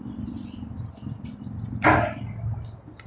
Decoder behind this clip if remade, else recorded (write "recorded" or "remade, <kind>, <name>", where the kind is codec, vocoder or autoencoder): recorded